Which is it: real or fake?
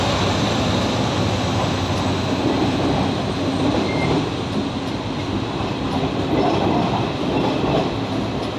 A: real